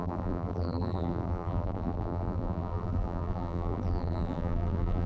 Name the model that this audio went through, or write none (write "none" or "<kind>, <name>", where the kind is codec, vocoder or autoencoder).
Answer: vocoder, BigVGAN v2